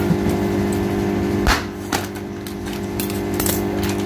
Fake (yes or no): no